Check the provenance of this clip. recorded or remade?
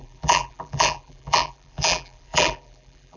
remade